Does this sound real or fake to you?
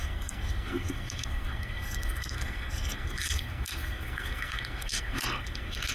fake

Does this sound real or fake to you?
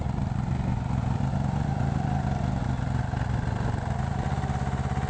real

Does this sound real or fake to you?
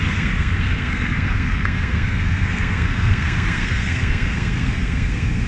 fake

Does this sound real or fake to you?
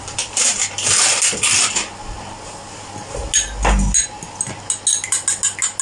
real